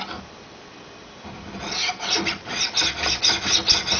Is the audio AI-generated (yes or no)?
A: no